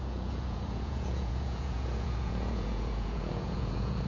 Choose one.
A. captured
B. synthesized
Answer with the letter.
B